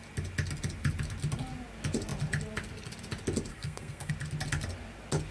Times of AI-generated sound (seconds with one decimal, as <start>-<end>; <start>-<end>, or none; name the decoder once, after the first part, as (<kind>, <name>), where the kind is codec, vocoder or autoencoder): 3.5-4.1 (codec, SNAC)